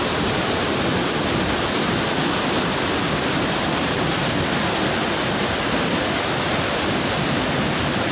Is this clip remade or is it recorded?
recorded